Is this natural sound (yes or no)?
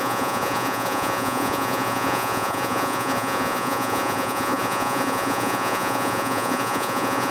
no